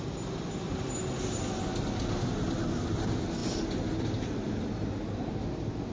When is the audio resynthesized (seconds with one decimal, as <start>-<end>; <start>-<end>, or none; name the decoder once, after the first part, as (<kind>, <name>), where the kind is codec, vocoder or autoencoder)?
none